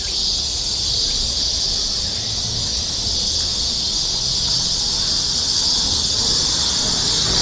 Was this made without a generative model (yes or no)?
yes